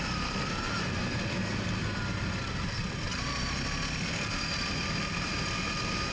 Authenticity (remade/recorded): recorded